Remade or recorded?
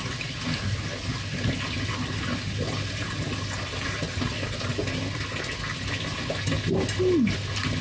recorded